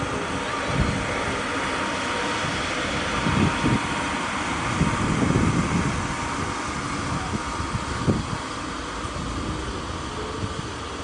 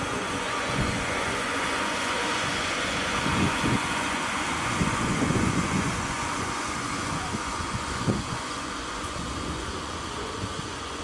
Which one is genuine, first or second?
first